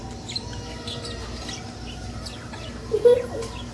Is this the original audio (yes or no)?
yes